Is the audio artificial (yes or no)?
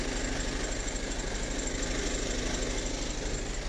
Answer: no